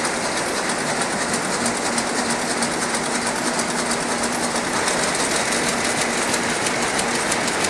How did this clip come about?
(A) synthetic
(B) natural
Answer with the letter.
B